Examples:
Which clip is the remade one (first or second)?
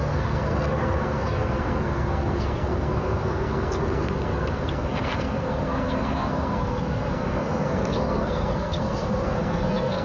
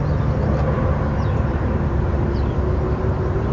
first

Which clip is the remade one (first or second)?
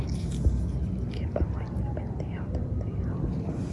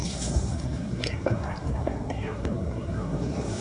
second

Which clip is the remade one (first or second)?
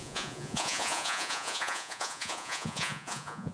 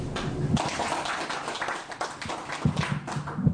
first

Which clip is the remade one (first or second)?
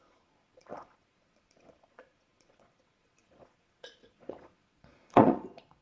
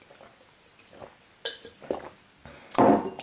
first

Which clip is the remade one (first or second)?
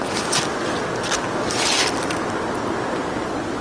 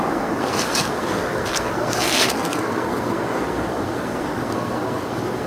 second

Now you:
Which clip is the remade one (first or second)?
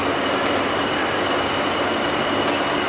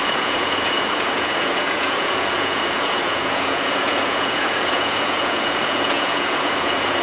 second